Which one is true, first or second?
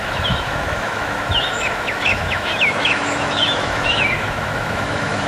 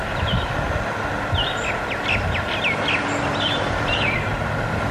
second